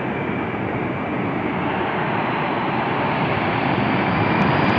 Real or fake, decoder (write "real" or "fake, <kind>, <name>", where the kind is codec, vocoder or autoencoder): real